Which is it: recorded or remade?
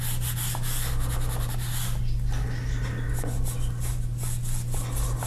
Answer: recorded